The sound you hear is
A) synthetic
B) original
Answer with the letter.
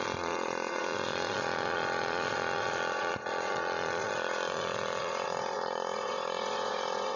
A